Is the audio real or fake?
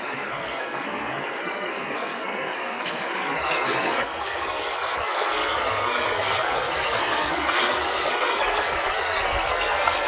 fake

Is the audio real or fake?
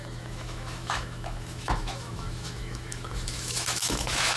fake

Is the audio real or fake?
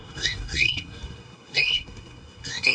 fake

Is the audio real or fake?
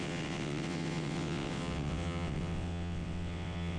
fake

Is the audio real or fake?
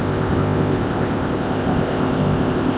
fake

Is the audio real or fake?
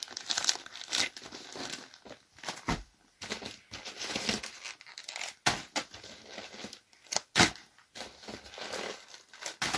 real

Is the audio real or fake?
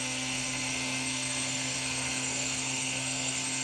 fake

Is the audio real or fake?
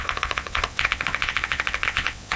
fake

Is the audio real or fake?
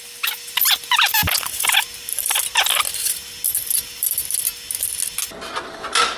real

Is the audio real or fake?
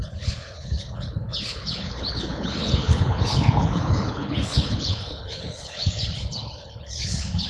fake